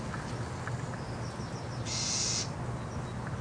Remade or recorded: recorded